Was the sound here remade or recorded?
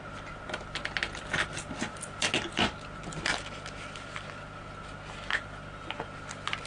recorded